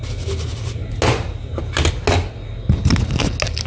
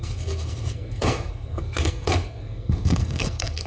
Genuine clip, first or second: first